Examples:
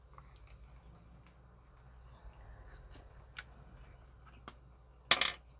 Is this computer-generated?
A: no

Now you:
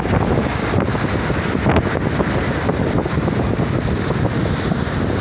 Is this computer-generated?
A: no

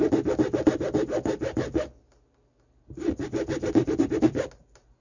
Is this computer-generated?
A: no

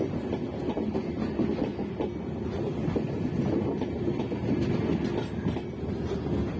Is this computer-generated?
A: no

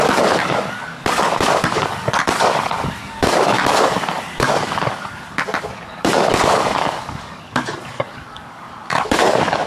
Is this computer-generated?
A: yes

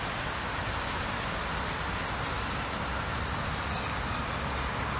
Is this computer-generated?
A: no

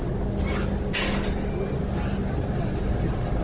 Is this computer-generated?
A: no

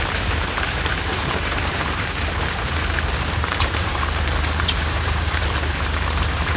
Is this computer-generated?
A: yes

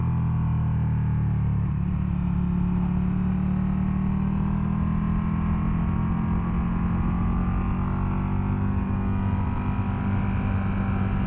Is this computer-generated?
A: no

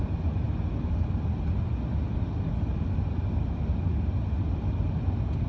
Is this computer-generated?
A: no